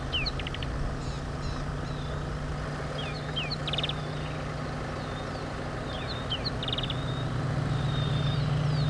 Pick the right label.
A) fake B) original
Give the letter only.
B